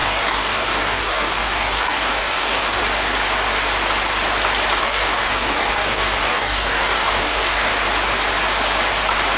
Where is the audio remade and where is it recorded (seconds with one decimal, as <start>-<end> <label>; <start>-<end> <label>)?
0.0-2.8 remade; 2.8-4.8 recorded; 4.8-7.7 remade; 7.7-9.4 recorded